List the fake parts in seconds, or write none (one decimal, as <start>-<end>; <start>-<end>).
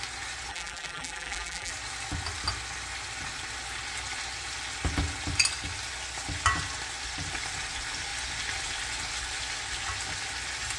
0.5-1.7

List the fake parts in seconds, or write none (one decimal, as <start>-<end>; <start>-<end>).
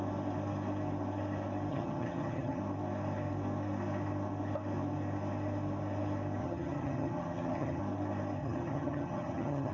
1.7-2.6; 6.4-7.8; 8.4-9.7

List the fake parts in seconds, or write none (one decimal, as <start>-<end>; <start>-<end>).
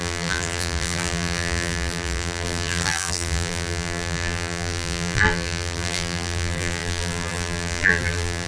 0.0-8.5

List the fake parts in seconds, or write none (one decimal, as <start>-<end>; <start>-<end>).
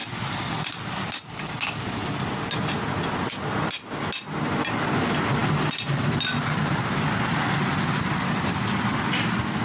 none